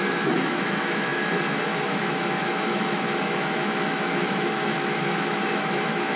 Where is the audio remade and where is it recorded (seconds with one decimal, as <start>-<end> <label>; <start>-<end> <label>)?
0.0-6.2 remade